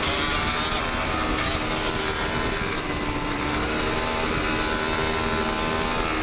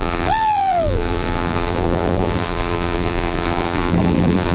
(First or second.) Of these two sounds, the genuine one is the first